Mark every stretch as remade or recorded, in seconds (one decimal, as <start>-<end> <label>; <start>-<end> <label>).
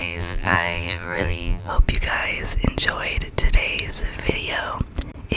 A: 0.0-1.7 remade; 1.7-5.4 recorded